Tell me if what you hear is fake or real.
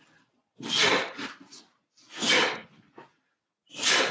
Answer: real